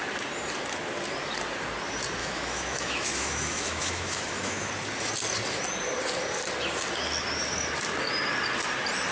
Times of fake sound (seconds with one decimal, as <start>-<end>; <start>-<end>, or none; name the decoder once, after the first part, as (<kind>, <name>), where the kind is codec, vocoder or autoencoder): 2.2-4.7 (autoencoder, DAC-VAE)